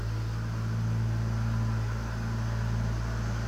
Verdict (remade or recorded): recorded